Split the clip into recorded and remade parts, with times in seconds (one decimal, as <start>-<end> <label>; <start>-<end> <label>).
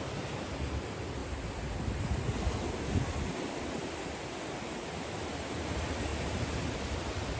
0.0-7.4 recorded